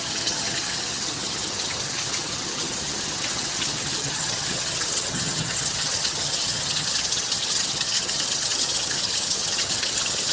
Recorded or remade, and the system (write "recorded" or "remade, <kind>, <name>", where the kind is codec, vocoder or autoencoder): remade, vocoder, HiFi-GAN